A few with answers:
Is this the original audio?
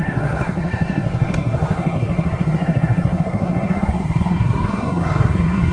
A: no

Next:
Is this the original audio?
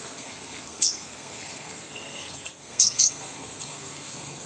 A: no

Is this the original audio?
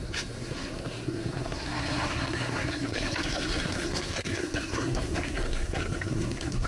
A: no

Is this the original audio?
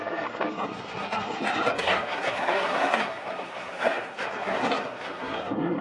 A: no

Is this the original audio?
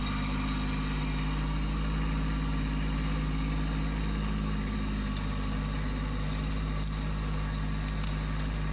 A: yes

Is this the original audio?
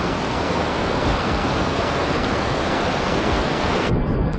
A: no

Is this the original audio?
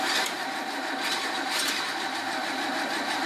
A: yes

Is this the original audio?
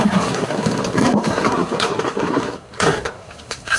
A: no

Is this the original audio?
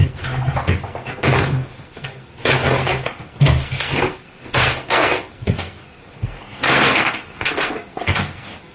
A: no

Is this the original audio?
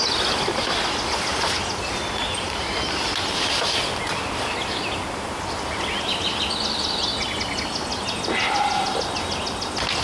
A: yes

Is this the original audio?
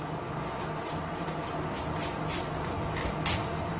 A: yes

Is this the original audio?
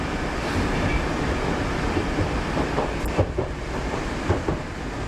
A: yes